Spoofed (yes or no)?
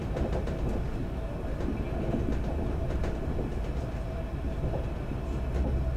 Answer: no